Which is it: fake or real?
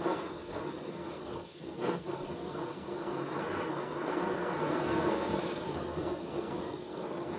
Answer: fake